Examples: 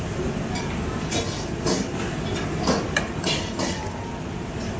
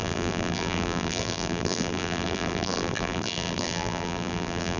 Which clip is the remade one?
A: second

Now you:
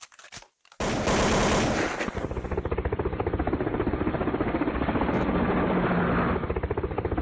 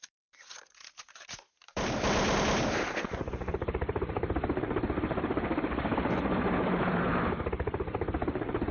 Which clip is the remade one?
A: second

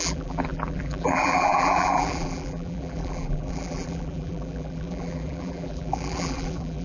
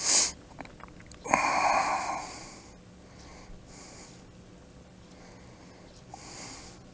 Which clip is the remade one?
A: first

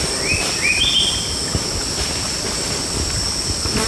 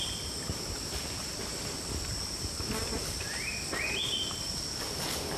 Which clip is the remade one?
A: second